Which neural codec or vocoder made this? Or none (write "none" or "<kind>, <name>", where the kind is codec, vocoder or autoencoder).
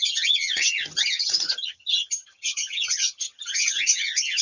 vocoder, HiFi-GAN